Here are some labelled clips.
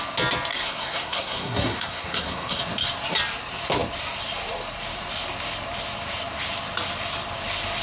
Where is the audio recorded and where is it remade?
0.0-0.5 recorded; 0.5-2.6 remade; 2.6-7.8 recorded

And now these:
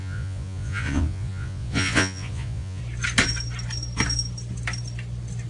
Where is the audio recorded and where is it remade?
0.0-2.8 remade; 2.8-5.5 recorded

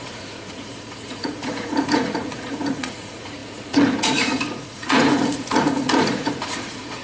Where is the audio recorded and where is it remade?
0.0-7.0 remade

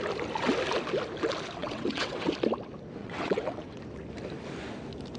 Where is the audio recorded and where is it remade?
0.0-1.6 recorded; 1.6-2.3 remade; 2.3-3.0 recorded; 3.0-3.8 remade; 3.8-5.2 recorded